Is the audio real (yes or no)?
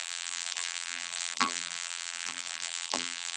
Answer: no